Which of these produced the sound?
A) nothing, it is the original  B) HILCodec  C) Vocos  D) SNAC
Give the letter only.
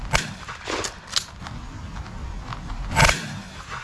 A